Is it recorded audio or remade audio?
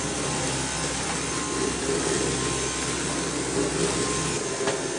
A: recorded